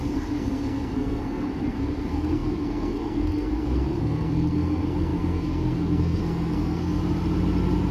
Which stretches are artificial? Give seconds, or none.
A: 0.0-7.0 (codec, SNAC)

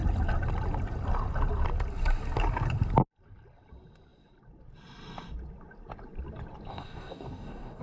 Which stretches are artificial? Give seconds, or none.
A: 6.7-7.8 (codec, DAC)

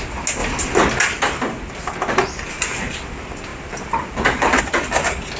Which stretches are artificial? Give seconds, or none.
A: none

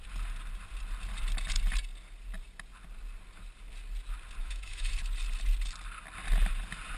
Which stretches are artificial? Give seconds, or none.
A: 4.4-4.9 (autoencoder, DAC-VAE)

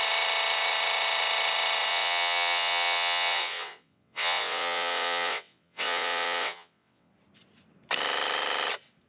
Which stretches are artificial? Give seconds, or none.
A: 1.9-7.1 (vocoder, WaveNeXt)